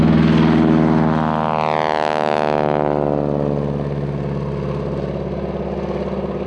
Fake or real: real